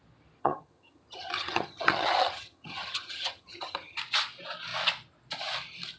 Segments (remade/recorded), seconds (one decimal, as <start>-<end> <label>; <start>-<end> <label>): 0.0-0.4 recorded; 0.4-4.0 remade; 4.0-6.0 recorded